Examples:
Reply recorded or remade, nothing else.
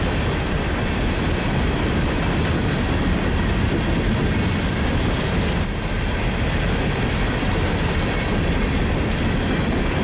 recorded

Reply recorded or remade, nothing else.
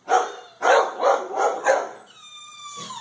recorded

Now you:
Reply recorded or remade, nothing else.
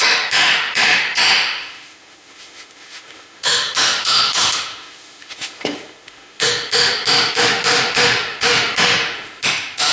remade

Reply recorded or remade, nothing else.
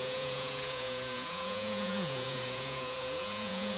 remade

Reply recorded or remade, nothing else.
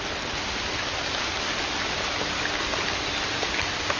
recorded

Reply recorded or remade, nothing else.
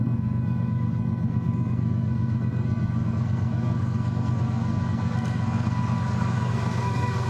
remade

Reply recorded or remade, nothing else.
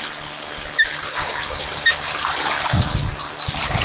recorded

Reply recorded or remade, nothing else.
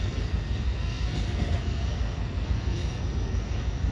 remade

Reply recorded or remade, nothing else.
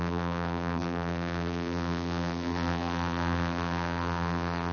remade